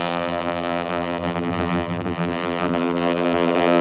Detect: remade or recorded remade